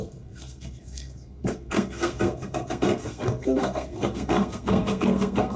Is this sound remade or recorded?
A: remade